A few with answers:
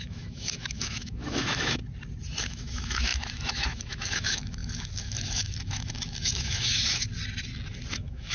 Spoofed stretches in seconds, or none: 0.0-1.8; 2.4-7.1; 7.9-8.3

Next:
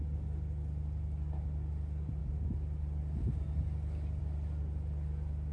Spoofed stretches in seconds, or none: none

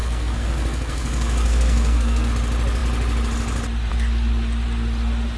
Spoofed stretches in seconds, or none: 0.0-2.3

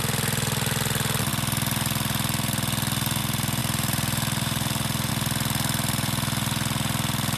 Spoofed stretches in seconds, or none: 3.6-5.1

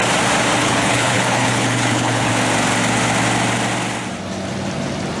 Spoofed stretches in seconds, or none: 0.6-2.3

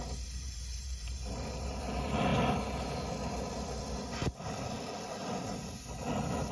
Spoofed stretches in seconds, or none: 0.0-2.3